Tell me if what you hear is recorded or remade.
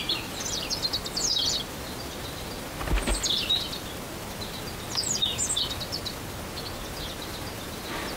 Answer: recorded